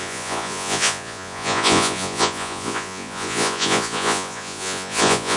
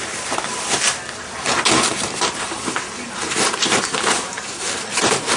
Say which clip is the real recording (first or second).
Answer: second